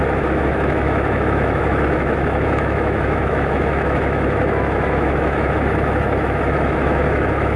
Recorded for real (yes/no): no